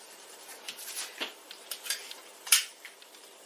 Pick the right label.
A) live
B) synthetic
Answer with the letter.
B